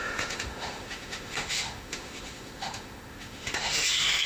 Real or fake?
fake